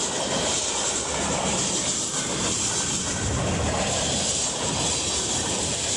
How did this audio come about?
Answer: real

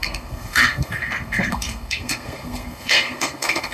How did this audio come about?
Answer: fake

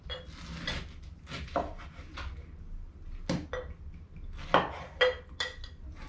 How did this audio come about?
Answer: real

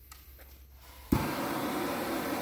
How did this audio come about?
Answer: real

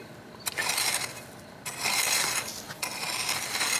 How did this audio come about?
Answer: real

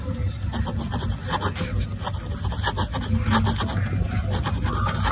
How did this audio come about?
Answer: real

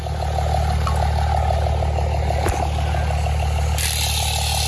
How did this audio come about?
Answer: real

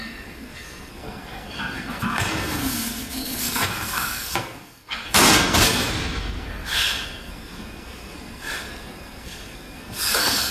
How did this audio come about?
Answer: fake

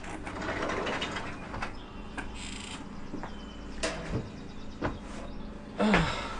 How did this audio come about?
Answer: real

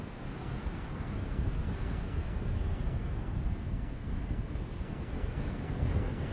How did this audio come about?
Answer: fake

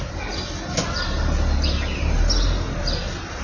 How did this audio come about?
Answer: real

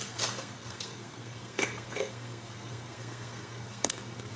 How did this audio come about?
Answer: fake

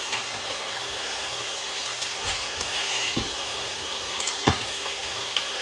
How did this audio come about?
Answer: fake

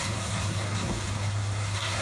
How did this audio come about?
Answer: fake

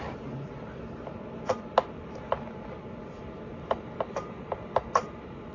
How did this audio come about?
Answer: real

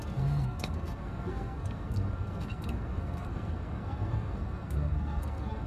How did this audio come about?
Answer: fake